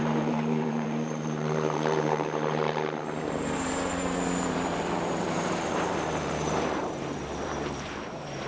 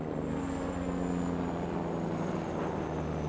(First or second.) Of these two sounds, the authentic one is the second